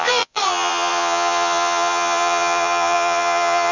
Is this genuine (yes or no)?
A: no